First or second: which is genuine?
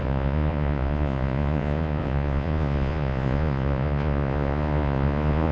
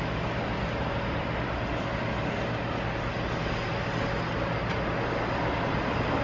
second